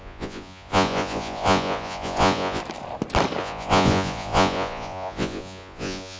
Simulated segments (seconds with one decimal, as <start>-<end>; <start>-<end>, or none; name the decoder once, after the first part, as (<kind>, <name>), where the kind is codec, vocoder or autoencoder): 0.0-2.6 (vocoder, Vocos); 3.4-6.2